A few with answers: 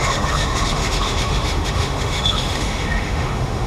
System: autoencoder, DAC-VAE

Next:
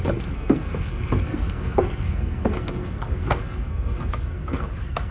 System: codec, SNAC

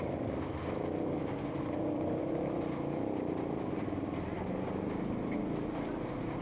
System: none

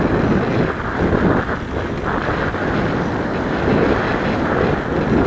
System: none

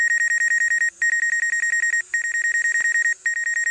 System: none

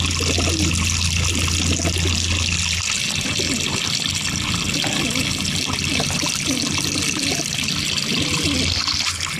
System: none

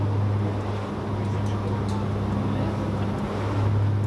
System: none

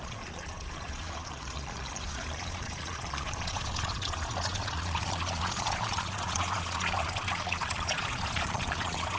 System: vocoder, Vocos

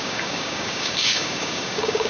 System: codec, DAC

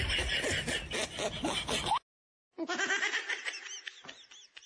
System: none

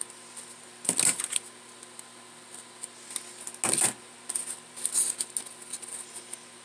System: none